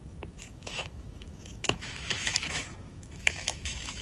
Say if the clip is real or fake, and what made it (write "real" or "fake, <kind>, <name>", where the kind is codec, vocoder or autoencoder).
fake, autoencoder, DAC-VAE